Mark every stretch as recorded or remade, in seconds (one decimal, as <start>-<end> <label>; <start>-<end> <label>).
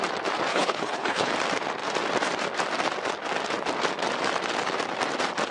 0.0-0.5 recorded; 0.5-1.3 remade; 1.3-5.5 recorded